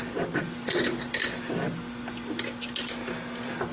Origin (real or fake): real